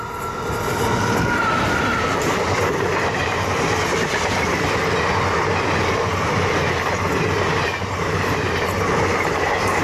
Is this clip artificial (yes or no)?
no